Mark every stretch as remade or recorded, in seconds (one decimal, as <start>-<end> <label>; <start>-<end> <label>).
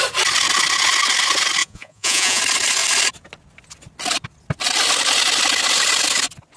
0.0-1.6 recorded; 1.6-2.4 remade; 2.4-6.6 recorded